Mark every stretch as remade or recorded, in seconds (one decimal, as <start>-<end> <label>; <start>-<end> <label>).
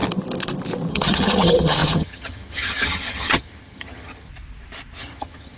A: 0.0-0.9 recorded; 0.9-4.3 remade; 4.3-5.0 recorded; 5.0-5.6 remade